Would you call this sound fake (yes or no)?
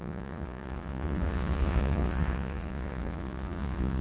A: yes